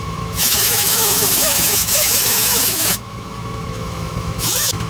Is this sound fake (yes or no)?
yes